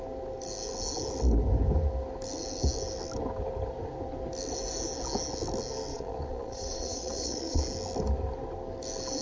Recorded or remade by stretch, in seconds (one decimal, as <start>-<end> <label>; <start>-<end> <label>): 0.0-5.9 recorded; 5.9-7.6 remade; 7.6-9.2 recorded